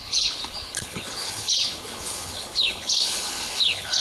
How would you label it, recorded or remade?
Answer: remade